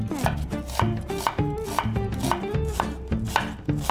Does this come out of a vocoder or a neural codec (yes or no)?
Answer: no